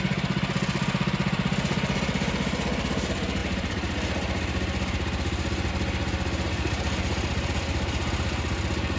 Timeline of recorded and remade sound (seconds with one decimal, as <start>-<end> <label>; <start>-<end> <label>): 0.0-9.0 recorded